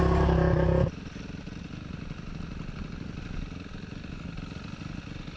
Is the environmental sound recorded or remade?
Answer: recorded